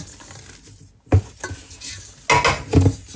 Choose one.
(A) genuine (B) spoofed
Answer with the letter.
A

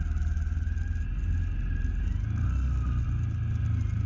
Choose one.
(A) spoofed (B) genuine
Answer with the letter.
B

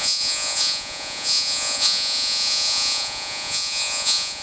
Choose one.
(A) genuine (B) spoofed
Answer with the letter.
B